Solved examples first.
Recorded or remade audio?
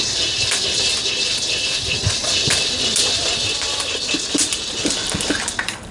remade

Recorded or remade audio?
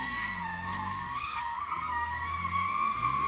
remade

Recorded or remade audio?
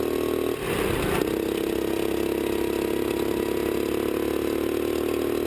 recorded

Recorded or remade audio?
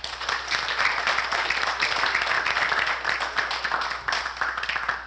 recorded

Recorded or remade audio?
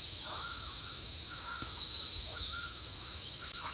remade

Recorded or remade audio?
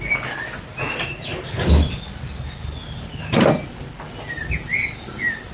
recorded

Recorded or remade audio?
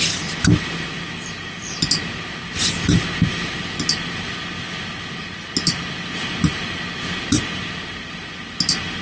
recorded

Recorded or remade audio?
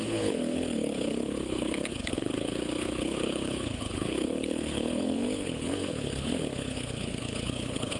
remade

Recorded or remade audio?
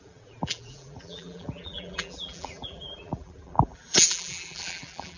remade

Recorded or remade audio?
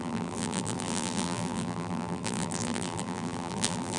remade